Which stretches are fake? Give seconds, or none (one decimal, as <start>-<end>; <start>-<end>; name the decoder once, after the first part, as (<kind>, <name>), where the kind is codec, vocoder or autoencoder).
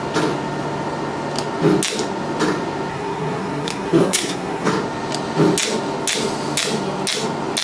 2.9-4.7 (codec, SNAC)